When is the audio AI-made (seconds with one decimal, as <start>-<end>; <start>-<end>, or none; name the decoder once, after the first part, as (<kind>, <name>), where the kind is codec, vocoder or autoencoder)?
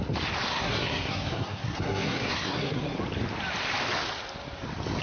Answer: 0.5-3.0 (codec, SNAC)